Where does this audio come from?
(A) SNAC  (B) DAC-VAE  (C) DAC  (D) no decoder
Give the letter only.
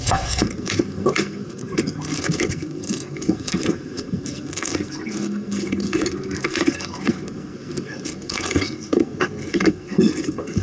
A